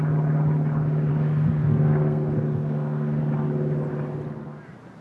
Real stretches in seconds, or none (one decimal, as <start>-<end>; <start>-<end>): 0.0-1.1; 3.2-5.0